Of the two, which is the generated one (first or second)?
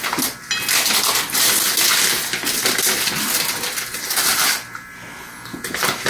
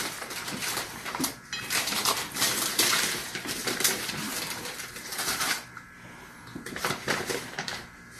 second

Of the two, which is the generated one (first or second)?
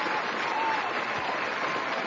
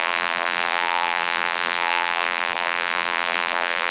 second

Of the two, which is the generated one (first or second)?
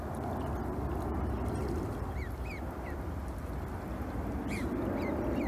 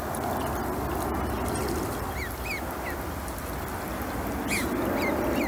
first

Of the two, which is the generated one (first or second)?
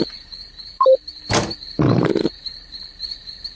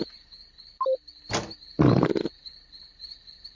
first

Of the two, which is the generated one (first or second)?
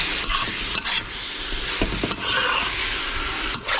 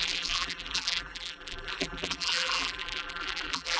second